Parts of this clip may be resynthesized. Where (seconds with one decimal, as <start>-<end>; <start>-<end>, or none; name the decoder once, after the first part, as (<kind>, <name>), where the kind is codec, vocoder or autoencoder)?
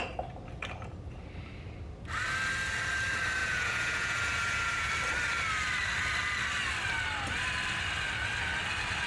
3.4-4.9 (vocoder, Vocos)